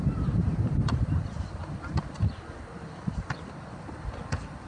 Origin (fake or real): real